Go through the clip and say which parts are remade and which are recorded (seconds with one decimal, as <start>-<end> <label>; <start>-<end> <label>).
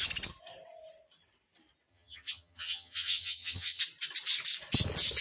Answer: 0.0-1.9 recorded; 1.9-3.8 remade; 3.8-5.2 recorded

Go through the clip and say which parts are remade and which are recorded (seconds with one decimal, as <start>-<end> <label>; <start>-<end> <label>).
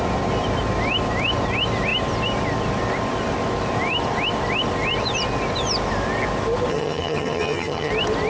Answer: 0.0-6.7 recorded; 6.7-7.9 remade; 7.9-8.3 recorded